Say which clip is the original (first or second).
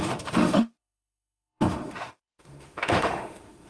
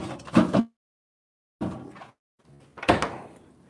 second